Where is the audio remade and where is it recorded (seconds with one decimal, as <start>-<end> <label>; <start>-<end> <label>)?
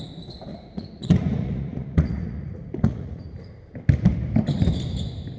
0.0-0.5 recorded; 0.5-3.5 remade; 3.5-5.4 recorded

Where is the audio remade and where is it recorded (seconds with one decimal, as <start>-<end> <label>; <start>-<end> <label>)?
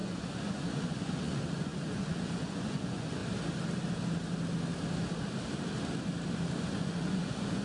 0.0-3.2 remade; 3.2-6.6 recorded; 6.6-7.6 remade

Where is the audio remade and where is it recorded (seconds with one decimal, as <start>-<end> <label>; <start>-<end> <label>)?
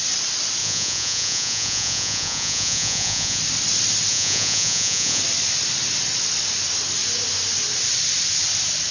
0.0-0.6 recorded; 0.6-3.4 remade; 3.4-4.1 recorded; 4.1-5.2 remade; 5.2-8.9 recorded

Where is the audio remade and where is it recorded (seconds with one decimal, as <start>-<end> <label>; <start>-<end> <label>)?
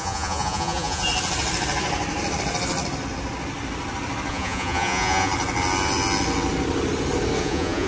0.0-1.1 remade; 1.1-4.3 recorded; 4.3-5.3 remade; 5.3-7.4 recorded; 7.4-7.9 remade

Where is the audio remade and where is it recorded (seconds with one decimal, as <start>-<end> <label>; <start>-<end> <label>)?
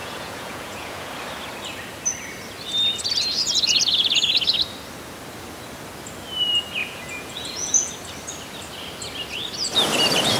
0.0-1.1 remade; 1.1-6.8 recorded; 6.8-7.9 remade; 7.9-10.4 recorded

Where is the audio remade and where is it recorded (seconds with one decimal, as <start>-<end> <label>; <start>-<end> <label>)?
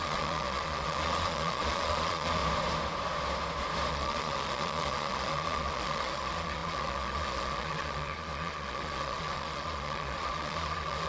0.0-2.4 remade; 2.4-3.9 recorded; 3.9-11.1 remade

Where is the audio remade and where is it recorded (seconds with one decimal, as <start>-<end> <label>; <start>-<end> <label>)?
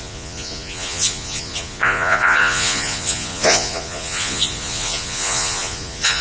0.0-6.2 remade